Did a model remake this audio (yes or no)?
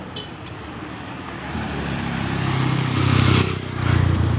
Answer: no